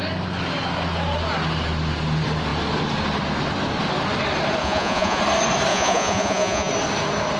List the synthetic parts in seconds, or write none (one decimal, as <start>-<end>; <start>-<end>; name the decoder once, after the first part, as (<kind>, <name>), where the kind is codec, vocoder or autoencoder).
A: 4.6-5.2 (vocoder, Vocos); 5.7-6.7